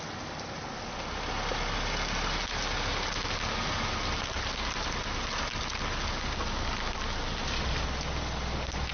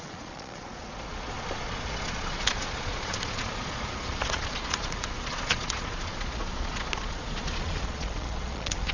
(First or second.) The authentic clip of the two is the first